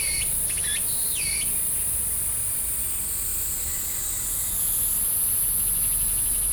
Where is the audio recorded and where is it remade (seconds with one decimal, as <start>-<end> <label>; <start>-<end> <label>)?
0.0-3.3 recorded; 3.3-4.0 remade; 4.0-6.5 recorded